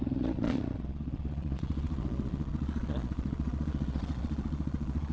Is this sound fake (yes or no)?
yes